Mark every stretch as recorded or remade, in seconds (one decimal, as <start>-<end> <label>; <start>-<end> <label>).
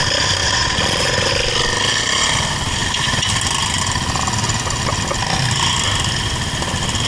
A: 0.0-0.4 recorded; 0.4-1.3 remade; 1.3-7.1 recorded